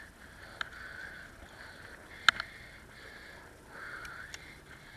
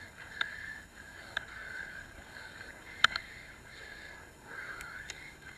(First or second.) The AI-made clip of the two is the second